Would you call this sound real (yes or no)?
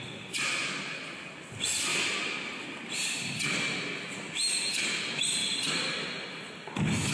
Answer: yes